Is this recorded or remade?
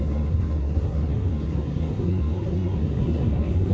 remade